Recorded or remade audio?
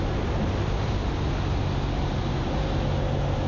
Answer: recorded